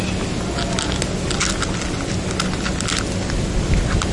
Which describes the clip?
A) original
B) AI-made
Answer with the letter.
A